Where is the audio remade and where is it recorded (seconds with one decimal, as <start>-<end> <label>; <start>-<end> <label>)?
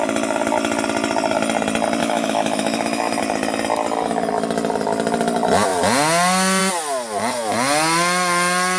0.0-2.0 recorded; 2.0-3.2 remade; 3.2-8.8 recorded